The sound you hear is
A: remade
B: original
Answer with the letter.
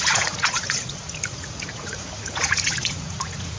A